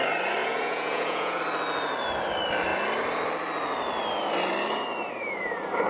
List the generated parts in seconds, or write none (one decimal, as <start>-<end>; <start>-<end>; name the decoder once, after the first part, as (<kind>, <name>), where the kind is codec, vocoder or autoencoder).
0.4-1.4 (vocoder, Vocos)